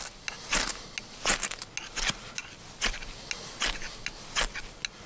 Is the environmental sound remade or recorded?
recorded